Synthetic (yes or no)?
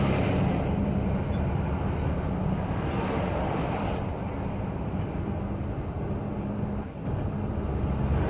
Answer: no